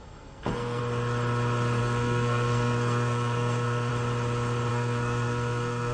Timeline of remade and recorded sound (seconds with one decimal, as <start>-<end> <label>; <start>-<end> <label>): 0.0-0.8 remade; 0.8-1.8 recorded; 1.8-3.9 remade; 3.9-4.7 recorded; 4.7-5.9 remade